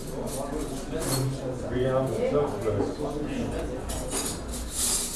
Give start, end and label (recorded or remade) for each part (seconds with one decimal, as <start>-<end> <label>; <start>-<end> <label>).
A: 0.0-5.2 recorded